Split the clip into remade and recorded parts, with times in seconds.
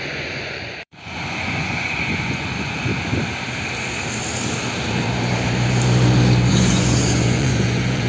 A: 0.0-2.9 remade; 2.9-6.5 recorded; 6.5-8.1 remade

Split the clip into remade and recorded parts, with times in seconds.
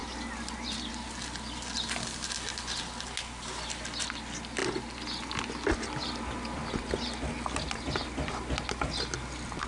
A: 0.0-9.7 recorded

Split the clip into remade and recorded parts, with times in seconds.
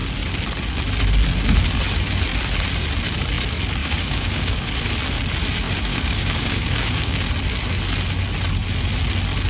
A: 0.0-3.8 recorded; 3.8-4.7 remade; 4.7-5.9 recorded; 5.9-7.3 remade; 7.3-9.5 recorded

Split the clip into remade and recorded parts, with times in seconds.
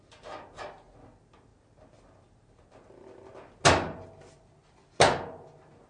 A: 0.0-5.9 recorded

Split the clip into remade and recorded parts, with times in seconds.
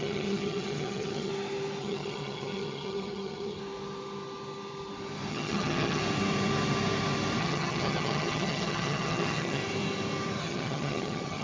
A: 0.0-1.3 remade; 1.3-1.8 recorded; 1.8-3.6 remade; 3.6-5.3 recorded; 5.3-6.0 remade; 6.0-7.4 recorded; 7.4-9.6 remade; 9.6-10.4 recorded; 10.4-11.4 remade